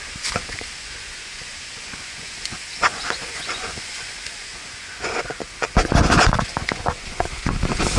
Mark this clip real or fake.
fake